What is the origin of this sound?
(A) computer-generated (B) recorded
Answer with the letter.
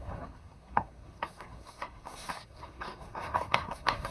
A